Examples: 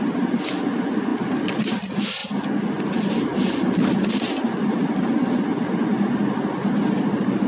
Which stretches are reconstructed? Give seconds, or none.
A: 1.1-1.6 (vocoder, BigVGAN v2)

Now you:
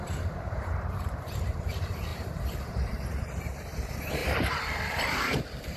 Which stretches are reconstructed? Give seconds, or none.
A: 0.0-4.2 (vocoder, BigVGAN v2); 4.9-5.8

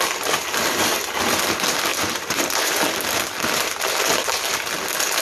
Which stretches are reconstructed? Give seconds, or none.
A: 1.9-2.8 (vocoder, BigVGAN v2)

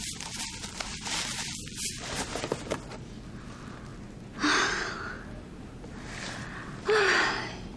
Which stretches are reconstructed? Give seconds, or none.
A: none

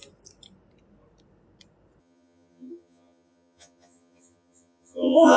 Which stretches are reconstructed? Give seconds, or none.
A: 2.0-5.4 (vocoder, HiFi-GAN)

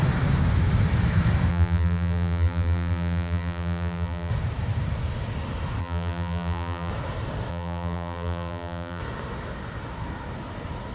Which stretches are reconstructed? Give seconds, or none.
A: 1.5-4.3 (vocoder, BigVGAN v2); 5.8-6.9; 7.5-9.0

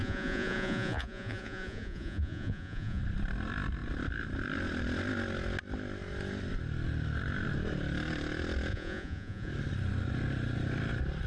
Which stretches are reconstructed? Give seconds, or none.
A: 0.0-3.0 (vocoder, Vocos); 8.7-9.5